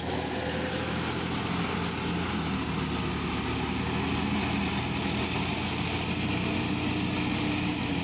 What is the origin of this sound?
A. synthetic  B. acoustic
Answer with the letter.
B